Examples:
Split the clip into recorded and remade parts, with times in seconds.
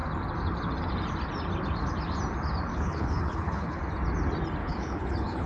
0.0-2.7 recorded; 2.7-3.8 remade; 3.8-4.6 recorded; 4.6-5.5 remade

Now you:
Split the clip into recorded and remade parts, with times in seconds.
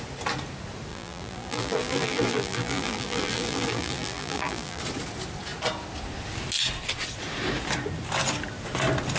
0.0-0.9 recorded; 0.9-4.8 remade; 4.8-9.2 recorded